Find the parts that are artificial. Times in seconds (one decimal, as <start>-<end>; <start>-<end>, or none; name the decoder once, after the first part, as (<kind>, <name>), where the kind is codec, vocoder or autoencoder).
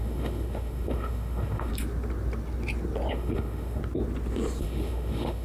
0.0-1.7 (autoencoder, DAC-VAE); 3.1-3.8; 4.6-5.4